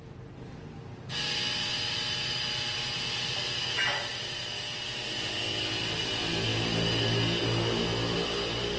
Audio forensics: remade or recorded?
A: recorded